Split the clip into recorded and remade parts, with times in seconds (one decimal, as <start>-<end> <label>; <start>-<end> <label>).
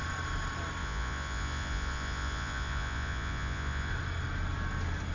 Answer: 0.0-0.8 recorded; 0.8-3.9 remade; 3.9-5.1 recorded